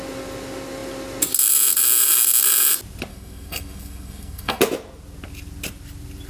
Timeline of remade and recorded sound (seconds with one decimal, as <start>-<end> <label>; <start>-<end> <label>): 0.0-3.1 recorded; 3.1-4.6 remade; 4.6-6.3 recorded